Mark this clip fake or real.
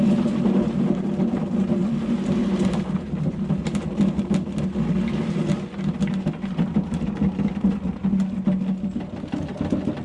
real